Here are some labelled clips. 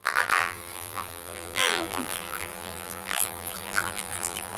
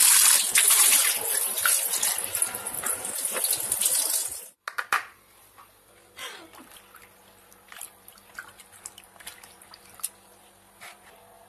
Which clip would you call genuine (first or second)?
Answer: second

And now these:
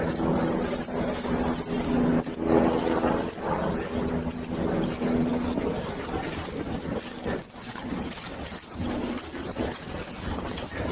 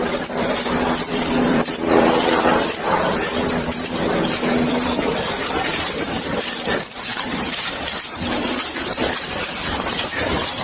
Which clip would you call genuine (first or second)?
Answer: first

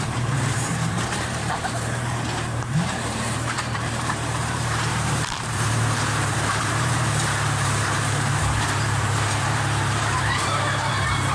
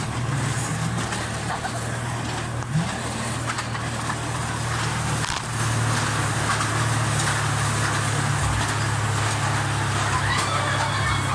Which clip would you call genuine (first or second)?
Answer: second